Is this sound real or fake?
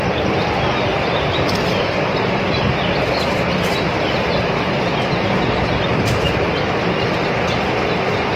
real